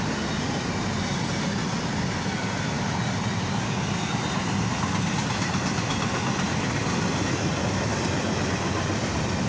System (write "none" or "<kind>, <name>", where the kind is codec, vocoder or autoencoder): none